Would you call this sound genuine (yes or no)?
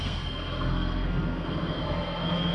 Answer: no